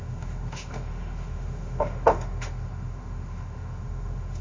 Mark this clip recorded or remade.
remade